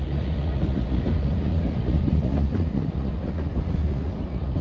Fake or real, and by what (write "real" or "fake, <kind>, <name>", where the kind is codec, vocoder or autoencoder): fake, vocoder, Vocos